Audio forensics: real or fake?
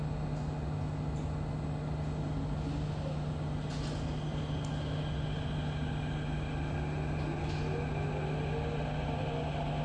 real